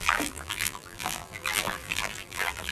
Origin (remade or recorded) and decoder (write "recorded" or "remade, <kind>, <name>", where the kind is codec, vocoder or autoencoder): remade, vocoder, BigVGAN v2